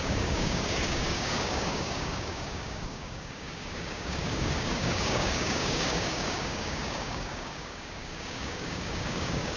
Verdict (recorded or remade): remade